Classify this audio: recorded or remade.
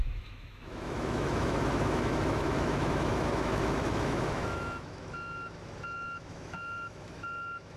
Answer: remade